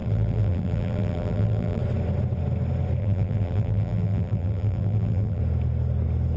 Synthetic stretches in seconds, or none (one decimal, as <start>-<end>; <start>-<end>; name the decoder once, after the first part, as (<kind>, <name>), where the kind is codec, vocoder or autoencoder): 0.0-1.8 (vocoder, BigVGAN v2); 3.0-5.4